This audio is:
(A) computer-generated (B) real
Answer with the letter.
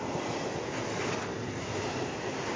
B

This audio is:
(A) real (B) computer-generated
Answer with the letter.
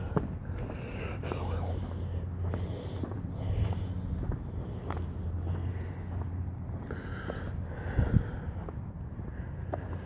A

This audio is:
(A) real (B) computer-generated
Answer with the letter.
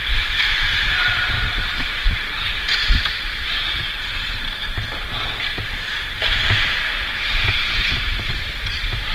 B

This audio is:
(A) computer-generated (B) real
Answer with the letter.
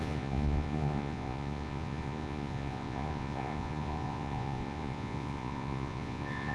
A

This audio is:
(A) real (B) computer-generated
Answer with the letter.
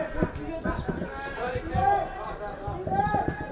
A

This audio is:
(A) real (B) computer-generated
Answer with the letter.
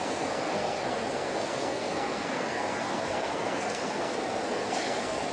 B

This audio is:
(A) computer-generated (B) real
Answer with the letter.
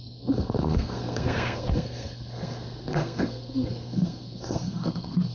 A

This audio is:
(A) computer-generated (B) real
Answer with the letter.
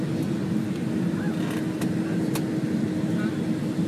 B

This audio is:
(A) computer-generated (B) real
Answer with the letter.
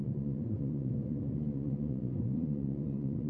A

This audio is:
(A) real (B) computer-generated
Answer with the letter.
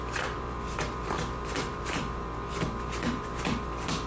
B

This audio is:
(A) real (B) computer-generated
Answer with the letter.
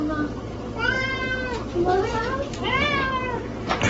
A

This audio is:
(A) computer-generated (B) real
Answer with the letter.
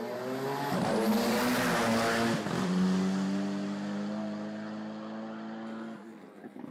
B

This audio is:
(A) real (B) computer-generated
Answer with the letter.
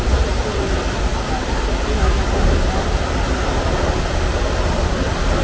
A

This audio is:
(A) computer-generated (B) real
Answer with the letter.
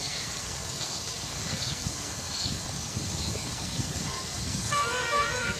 A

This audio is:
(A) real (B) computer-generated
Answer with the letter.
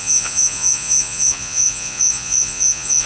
B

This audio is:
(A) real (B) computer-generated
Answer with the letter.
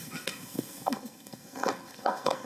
B